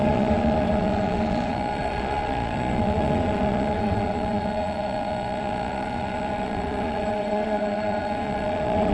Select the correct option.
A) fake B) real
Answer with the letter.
A